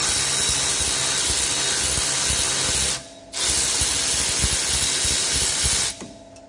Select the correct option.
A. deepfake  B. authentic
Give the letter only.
B